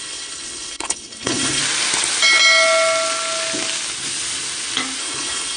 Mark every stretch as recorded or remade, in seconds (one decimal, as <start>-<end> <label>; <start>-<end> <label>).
0.0-1.6 remade; 1.6-5.0 recorded; 5.0-5.6 remade